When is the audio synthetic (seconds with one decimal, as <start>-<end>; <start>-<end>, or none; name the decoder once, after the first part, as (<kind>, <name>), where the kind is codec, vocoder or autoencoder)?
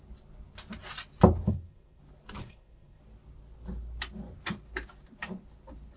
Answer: 1.5-2.0 (codec, SNAC); 2.4-3.0